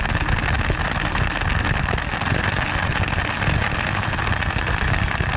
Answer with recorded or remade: recorded